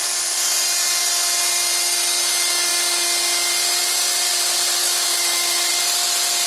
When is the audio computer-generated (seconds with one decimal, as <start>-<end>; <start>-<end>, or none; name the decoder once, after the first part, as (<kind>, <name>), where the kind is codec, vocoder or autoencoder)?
4.8-5.7 (autoencoder, DAC-VAE)